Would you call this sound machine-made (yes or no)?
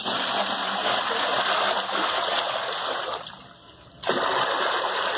no